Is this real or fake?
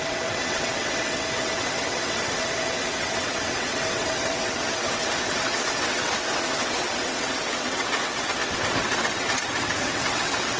fake